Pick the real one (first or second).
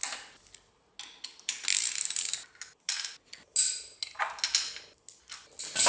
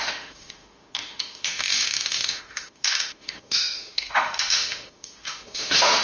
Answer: first